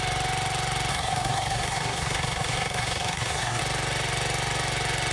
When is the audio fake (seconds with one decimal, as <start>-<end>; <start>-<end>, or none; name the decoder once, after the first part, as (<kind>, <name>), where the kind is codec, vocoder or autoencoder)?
0.9-3.6 (codec, SNAC)